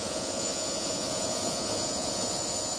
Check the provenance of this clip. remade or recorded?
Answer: remade